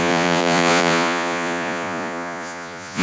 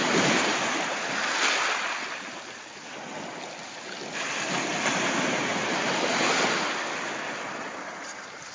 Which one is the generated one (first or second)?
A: first